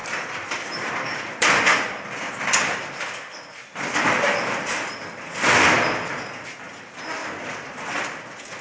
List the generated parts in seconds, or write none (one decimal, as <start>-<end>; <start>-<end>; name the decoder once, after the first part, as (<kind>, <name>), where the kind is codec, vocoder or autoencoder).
7.2-8.2 (vocoder, BigVGAN v2)

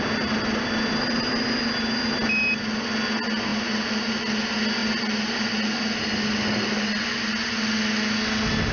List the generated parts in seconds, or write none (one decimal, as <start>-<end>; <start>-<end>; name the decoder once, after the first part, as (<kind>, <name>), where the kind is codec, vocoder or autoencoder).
none

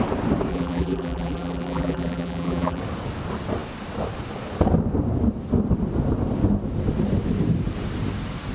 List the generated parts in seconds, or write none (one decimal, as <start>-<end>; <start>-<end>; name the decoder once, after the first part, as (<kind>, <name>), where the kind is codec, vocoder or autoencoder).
0.5-2.8 (vocoder, BigVGAN v2)

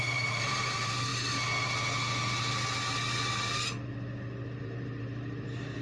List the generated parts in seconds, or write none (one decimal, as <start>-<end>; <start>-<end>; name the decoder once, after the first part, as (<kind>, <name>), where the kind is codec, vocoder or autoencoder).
0.0-1.1 (vocoder, BigVGAN v2); 4.6-5.8

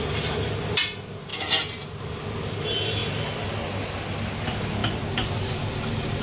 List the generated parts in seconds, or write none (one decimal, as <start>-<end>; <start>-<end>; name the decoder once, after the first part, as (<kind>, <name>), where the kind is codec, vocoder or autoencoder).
4.8-5.6 (vocoder, BigVGAN v2)

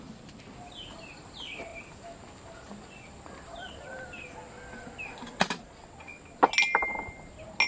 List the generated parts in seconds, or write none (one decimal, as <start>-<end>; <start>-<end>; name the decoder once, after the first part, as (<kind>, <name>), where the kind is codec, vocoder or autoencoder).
1.7-2.7 (vocoder, BigVGAN v2)

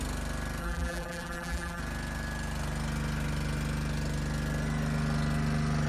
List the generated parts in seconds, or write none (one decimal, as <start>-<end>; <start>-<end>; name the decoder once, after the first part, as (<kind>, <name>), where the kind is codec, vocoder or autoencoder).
0.6-1.8 (vocoder, BigVGAN v2)

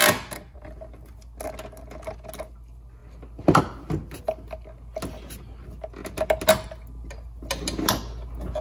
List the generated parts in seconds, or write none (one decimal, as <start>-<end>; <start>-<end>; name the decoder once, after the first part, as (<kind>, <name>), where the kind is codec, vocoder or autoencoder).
none